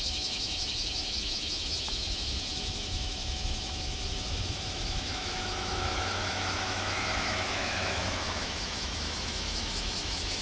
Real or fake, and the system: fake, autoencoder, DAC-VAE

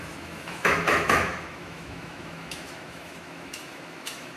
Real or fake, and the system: fake, autoencoder, DAC-VAE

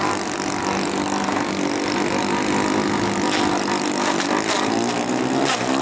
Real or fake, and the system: real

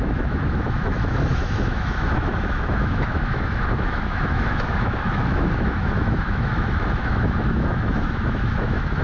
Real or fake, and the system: fake, autoencoder, DAC-VAE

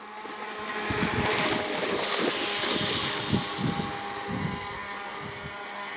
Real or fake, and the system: real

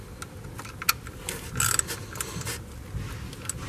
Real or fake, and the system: real